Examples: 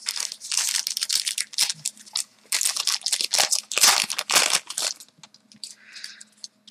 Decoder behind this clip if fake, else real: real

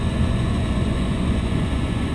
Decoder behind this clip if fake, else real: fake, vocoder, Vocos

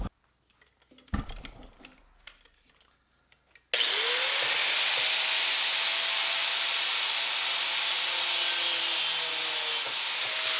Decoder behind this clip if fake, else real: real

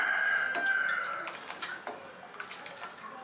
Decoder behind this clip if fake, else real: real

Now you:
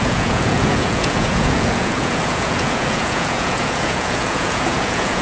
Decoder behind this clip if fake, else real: fake, vocoder, Vocos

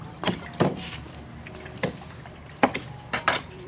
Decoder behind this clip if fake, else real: fake, vocoder, BigVGAN v2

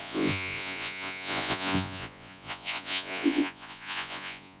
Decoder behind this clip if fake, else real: fake, vocoder, Vocos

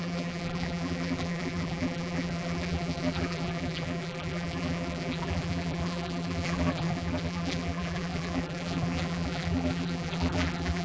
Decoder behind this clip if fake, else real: fake, vocoder, BigVGAN v2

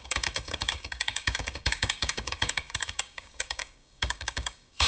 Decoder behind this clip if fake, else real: fake, codec, DAC